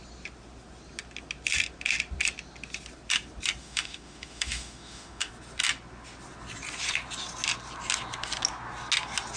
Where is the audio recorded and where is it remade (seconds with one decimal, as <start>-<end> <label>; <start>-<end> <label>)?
0.0-3.6 recorded; 3.6-5.3 remade; 5.3-9.4 recorded